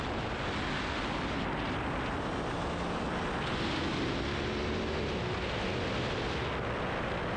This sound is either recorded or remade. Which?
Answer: recorded